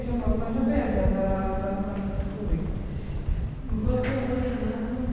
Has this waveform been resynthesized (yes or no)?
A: no